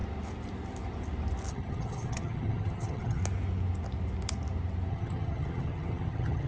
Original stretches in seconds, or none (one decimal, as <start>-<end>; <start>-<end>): 0.0-1.5; 3.2-4.9